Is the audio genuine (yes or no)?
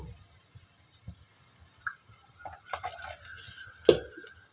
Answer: yes